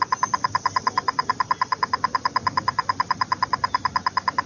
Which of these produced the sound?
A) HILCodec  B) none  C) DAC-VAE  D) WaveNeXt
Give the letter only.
B